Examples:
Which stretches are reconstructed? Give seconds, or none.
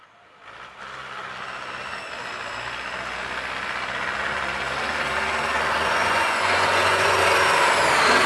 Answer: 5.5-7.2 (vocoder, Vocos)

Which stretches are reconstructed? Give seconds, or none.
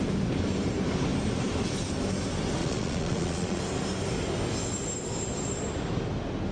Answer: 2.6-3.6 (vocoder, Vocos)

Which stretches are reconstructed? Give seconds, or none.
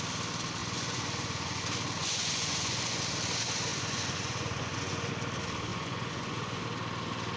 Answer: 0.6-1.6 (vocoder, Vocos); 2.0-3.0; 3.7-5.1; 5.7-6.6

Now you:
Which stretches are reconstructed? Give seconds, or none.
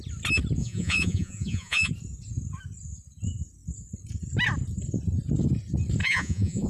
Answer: 0.6-1.9 (vocoder, Vocos); 6.0-6.7